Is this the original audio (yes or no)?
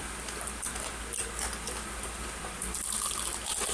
yes